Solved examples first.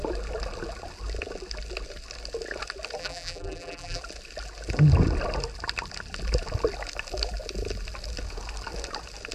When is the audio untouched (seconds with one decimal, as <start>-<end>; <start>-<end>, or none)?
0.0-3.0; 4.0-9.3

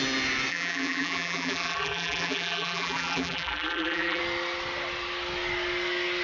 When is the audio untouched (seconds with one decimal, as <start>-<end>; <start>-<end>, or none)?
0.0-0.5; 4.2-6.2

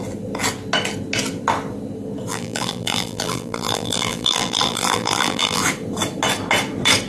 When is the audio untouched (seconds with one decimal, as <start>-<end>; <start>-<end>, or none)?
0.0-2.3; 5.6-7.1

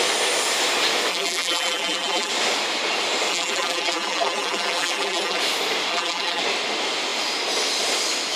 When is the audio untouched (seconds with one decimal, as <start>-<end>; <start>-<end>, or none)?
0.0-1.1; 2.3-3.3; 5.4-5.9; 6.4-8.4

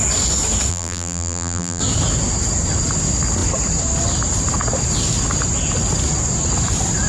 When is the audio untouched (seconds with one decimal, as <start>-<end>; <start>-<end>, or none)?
0.0-0.7; 1.8-7.1